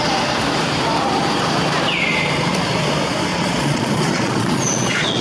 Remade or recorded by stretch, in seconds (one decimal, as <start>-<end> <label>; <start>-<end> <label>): 0.0-3.3 recorded; 3.3-5.2 remade